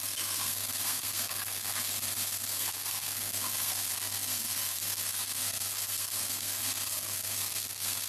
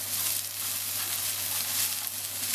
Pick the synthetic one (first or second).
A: first